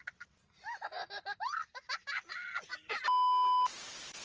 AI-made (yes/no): no